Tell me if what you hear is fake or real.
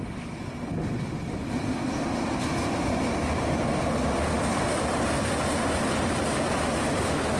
real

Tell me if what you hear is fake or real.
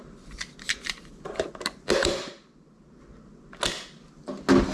real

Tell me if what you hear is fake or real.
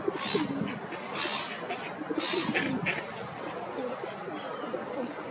real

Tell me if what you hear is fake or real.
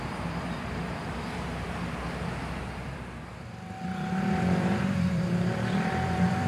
fake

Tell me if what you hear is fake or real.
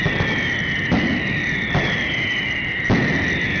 real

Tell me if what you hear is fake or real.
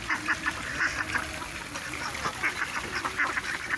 real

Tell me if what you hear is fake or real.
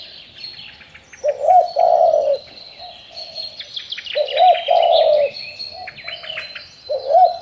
real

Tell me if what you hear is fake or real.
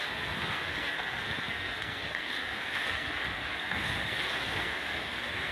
fake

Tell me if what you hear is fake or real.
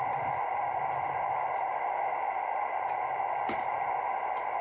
real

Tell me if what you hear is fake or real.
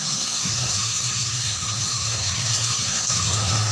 fake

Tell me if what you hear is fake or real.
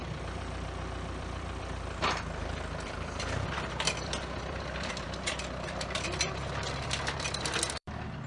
fake